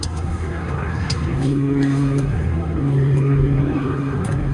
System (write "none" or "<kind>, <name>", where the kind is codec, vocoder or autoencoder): codec, SNAC